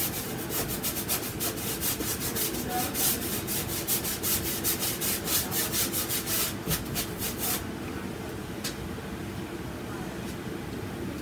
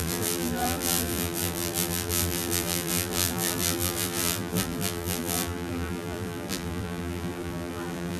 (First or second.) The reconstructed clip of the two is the second